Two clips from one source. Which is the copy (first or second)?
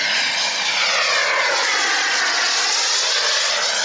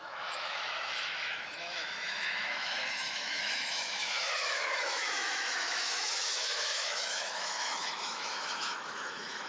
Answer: second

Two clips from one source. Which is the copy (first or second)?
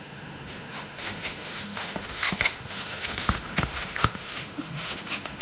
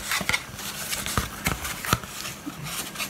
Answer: first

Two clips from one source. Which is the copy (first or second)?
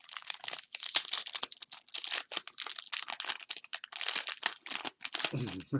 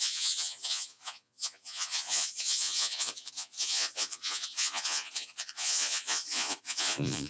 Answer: second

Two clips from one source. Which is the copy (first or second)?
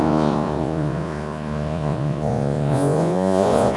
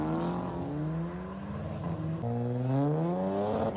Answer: first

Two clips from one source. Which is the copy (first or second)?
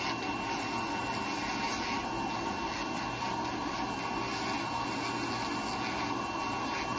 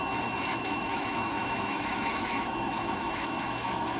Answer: second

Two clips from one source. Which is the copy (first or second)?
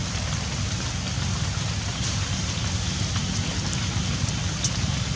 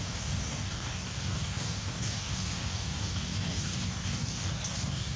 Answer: second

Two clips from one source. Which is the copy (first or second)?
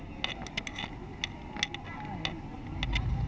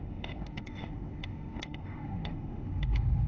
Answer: second